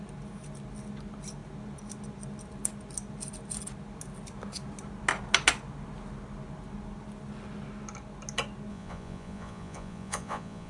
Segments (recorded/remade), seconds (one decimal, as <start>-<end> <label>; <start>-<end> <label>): 0.0-8.7 recorded; 8.7-10.7 remade